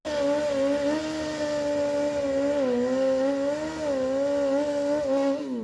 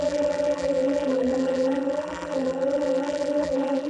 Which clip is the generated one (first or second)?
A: second